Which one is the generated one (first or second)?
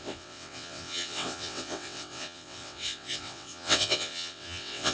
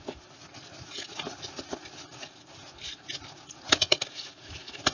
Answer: first